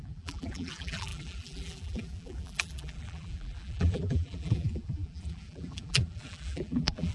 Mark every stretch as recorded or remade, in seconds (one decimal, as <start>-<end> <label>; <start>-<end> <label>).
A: 0.0-7.1 remade